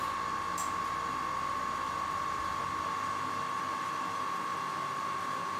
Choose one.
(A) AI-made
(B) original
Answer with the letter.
B